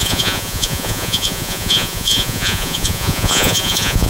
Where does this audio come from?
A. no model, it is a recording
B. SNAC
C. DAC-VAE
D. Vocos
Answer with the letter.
D